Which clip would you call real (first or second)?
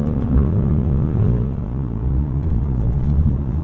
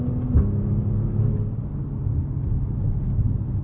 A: second